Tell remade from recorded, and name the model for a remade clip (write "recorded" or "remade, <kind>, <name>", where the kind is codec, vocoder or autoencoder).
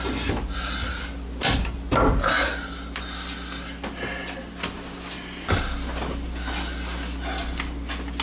recorded